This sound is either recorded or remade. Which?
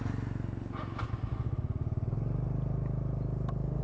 recorded